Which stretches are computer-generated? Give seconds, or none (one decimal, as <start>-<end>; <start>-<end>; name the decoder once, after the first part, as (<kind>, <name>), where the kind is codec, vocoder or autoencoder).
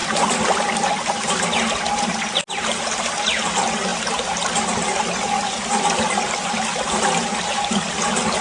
none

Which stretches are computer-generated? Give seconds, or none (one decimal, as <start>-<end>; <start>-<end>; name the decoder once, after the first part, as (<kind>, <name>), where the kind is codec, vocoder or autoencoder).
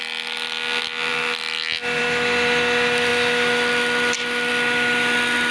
none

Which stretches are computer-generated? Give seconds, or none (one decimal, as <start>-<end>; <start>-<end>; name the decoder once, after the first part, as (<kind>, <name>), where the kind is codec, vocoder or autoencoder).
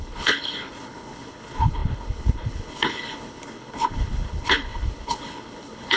0.0-6.0 (codec, HILCodec)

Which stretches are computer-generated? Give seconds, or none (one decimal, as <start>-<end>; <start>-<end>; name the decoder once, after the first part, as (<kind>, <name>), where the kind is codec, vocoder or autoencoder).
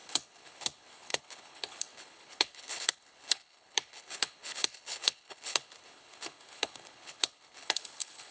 0.0-8.3 (codec, HILCodec)